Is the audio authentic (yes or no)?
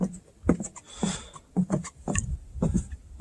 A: yes